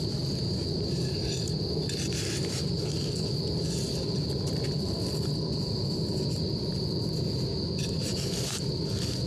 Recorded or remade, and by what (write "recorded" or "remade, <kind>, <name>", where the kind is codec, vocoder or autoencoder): recorded